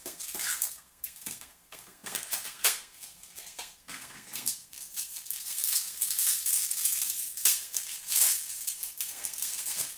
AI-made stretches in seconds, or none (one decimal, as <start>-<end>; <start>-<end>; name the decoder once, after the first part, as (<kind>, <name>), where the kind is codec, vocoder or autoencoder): 0.0-10.0 (codec, SNAC)